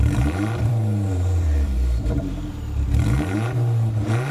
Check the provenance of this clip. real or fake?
fake